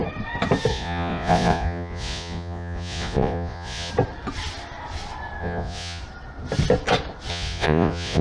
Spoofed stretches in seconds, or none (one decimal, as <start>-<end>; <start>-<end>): 0.7-3.9; 5.4-6.0; 7.3-8.2